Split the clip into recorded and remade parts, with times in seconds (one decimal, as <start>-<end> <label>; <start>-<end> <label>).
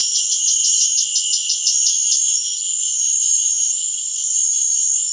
0.0-1.6 remade; 1.6-3.2 recorded; 3.2-4.0 remade; 4.0-5.1 recorded